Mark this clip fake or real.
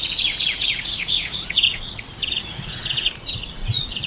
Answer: fake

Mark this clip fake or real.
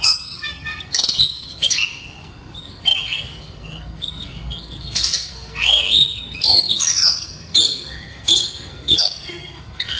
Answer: fake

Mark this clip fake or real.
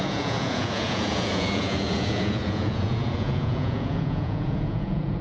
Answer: fake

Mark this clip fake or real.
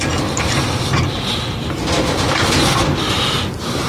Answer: real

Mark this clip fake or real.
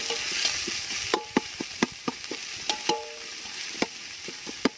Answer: real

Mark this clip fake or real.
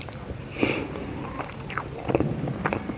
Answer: fake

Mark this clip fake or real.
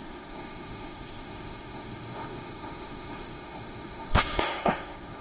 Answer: fake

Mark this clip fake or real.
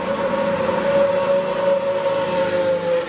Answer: real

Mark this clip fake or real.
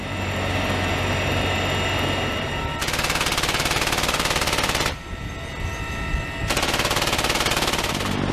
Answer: real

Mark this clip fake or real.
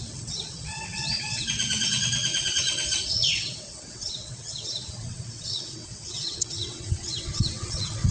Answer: fake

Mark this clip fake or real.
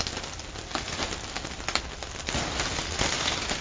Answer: real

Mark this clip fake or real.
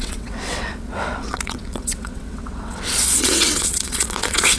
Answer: fake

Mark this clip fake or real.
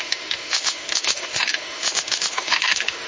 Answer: fake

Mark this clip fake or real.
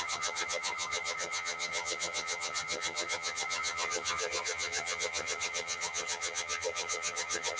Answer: fake